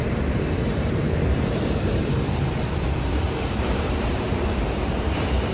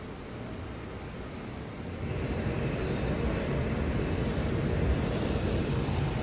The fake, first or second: first